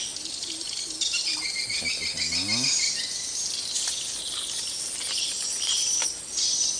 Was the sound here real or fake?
real